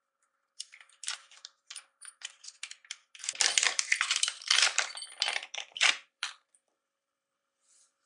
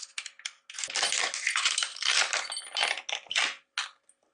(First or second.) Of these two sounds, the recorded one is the second